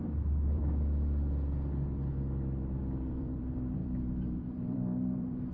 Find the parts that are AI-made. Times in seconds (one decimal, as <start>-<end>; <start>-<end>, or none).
0.0-0.6; 2.8-5.5